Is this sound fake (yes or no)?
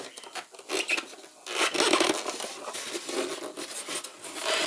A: no